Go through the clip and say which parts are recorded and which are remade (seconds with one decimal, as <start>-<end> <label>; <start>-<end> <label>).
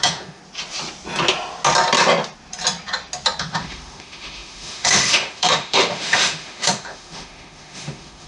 0.0-0.4 remade; 0.4-3.4 recorded; 3.4-8.3 remade